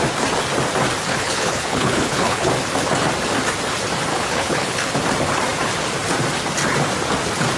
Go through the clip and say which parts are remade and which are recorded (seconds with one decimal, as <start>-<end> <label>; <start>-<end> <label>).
0.0-1.1 recorded; 1.1-2.5 remade; 2.5-4.1 recorded; 4.1-4.9 remade; 4.9-7.6 recorded